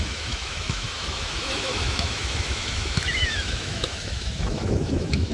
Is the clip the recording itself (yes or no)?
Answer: no